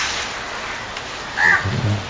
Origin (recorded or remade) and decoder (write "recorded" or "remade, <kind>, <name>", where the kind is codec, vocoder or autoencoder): recorded